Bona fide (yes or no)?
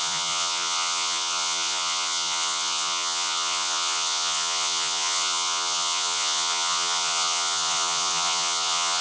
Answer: no